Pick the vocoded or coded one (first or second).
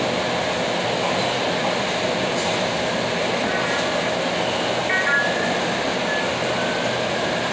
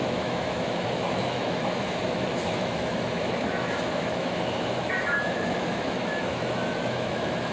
second